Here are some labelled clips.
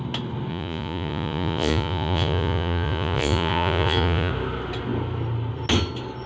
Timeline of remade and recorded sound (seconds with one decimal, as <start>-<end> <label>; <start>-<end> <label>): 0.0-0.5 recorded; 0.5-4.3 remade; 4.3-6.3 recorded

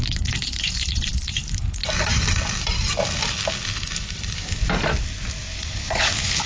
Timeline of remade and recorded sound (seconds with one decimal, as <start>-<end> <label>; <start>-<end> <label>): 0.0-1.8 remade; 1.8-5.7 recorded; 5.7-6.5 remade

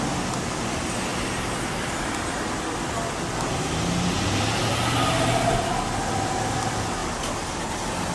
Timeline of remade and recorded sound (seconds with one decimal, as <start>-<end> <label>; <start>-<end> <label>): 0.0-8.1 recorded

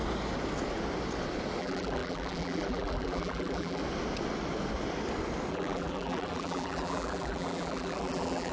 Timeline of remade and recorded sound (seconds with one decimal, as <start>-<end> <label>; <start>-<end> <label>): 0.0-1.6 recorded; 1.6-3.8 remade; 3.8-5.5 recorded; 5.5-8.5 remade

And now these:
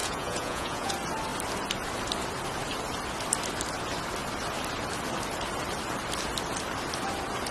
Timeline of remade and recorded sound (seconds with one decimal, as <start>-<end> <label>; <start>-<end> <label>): 0.0-0.9 remade; 0.9-7.5 recorded